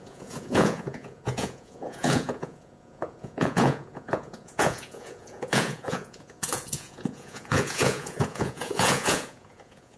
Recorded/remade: remade